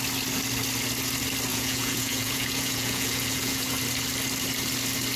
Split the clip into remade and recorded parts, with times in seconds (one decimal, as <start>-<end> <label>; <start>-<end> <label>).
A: 0.0-1.5 recorded; 1.5-3.8 remade; 3.8-5.2 recorded